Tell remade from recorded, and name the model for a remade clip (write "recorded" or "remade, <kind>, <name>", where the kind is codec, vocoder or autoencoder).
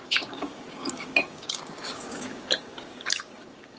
remade, codec, DAC